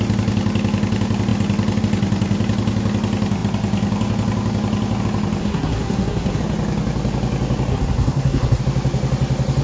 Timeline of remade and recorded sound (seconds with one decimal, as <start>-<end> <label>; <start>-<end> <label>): 0.0-5.4 recorded; 5.4-6.4 remade; 6.4-7.7 recorded; 7.7-8.6 remade; 8.6-9.6 recorded

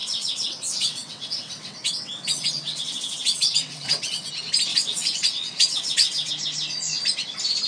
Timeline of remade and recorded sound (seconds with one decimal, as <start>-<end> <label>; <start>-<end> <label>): 0.0-4.3 remade; 4.3-4.7 recorded; 4.7-6.3 remade; 6.3-7.7 recorded

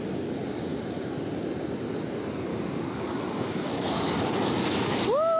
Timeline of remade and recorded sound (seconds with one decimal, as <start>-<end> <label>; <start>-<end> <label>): 0.0-2.5 recorded; 2.5-5.4 remade

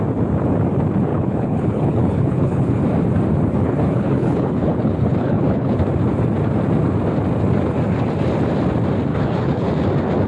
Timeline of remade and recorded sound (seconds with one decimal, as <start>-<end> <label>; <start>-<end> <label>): 0.0-1.1 recorded; 1.1-2.8 remade; 2.8-3.6 recorded; 3.6-5.8 remade; 5.8-9.1 recorded; 9.1-9.7 remade; 9.7-10.3 recorded